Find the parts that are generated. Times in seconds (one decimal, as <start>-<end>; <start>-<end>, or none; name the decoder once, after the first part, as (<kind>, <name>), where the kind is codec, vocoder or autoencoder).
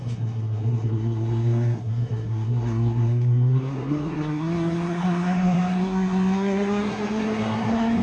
0.0-8.0 (codec, SNAC)